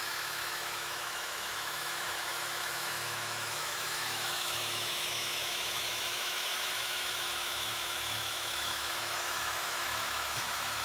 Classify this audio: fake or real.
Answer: fake